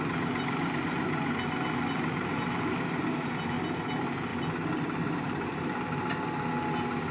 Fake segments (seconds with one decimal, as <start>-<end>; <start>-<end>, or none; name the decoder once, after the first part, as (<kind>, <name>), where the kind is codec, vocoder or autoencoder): 4.3-6.0 (vocoder, BigVGAN v2)